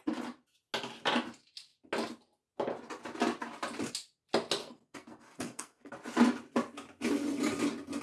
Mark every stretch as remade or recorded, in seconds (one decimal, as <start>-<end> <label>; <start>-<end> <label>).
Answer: 0.0-4.6 recorded; 4.6-5.9 remade; 5.9-8.0 recorded